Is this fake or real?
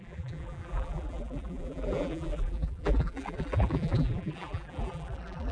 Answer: fake